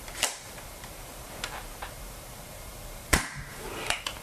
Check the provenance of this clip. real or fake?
fake